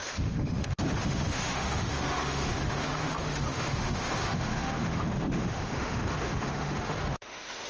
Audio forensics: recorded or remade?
remade